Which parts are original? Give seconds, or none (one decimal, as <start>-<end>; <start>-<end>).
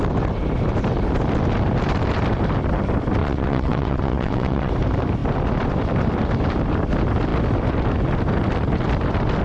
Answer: 0.0-3.2; 4.7-9.4